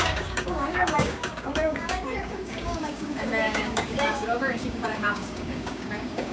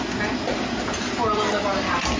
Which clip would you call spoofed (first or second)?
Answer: first